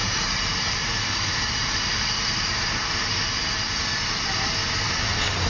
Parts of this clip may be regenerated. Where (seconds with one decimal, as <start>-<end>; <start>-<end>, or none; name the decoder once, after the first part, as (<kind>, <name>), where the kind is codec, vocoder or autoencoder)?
0.0-3.3 (vocoder, BigVGAN v2)